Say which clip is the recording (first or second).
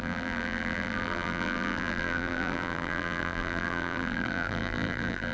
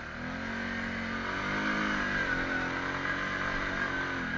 second